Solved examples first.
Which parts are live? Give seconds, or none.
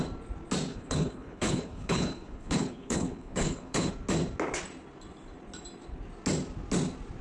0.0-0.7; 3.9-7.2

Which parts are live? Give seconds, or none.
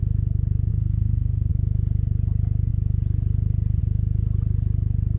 0.0-0.7; 1.5-5.2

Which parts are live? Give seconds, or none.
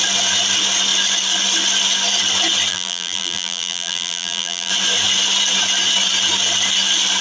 0.0-2.7; 4.7-7.2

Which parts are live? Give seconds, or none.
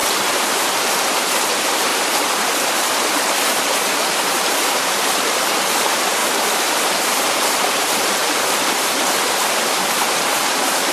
none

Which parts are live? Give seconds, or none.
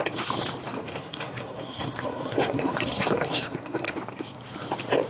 0.0-0.8; 3.9-5.1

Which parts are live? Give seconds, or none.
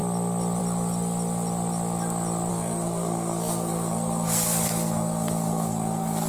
0.0-2.5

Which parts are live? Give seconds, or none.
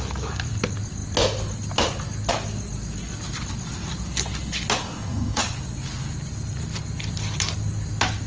0.0-4.8; 5.4-8.3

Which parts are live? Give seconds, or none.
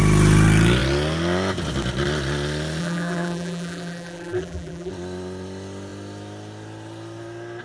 0.0-2.8; 4.9-7.6